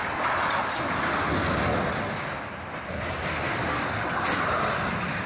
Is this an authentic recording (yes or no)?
yes